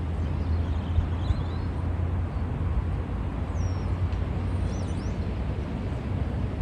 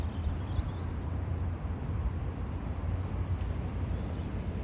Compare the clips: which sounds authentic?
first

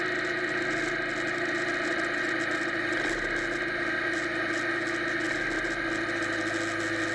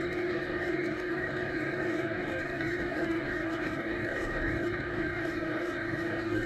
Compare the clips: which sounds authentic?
first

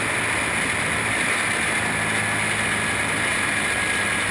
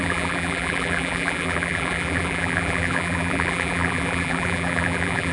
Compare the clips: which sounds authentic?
first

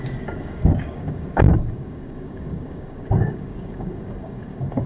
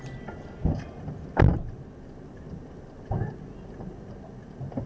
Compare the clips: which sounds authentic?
second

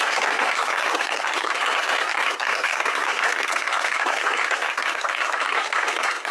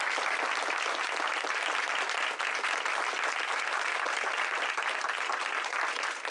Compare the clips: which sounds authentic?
second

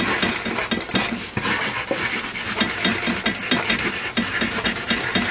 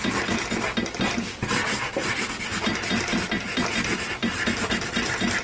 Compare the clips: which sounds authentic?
first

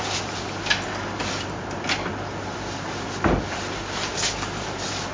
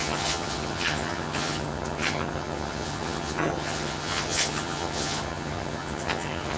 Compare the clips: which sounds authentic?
first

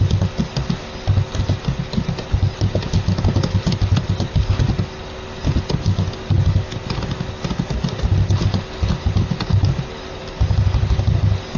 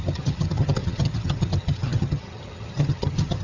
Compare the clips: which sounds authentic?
first